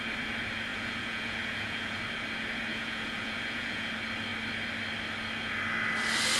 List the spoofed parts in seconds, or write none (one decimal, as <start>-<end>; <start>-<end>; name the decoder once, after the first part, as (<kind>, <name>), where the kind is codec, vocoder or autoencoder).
0.7-2.0 (vocoder, Vocos); 2.7-3.9